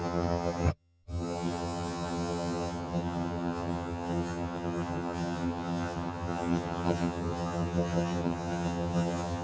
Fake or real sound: fake